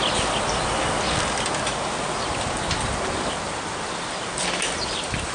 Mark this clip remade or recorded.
recorded